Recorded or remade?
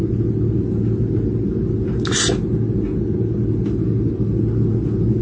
recorded